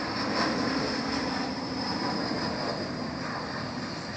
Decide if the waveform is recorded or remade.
recorded